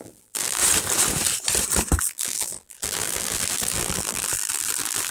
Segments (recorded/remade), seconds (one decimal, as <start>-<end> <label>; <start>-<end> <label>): 0.0-0.6 remade; 0.6-2.0 recorded; 2.0-5.1 remade